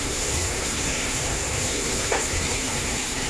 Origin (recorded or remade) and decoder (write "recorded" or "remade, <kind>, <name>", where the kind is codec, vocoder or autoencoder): remade, codec, SNAC